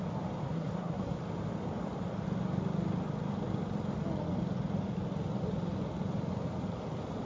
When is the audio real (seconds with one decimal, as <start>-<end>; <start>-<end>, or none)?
0.0-0.4; 1.2-7.3